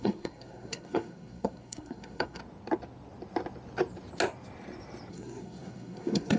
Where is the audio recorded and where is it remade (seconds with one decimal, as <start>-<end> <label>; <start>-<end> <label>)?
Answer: 0.0-2.4 remade; 2.4-5.1 recorded; 5.1-6.4 remade